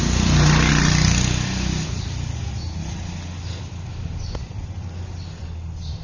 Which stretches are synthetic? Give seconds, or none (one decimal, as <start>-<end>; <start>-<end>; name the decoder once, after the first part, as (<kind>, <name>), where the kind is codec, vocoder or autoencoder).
none